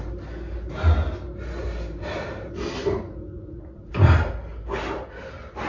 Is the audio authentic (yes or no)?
yes